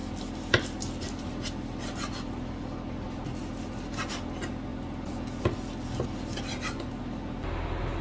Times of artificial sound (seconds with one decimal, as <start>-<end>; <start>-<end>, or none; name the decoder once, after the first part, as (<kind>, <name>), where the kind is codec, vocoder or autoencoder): none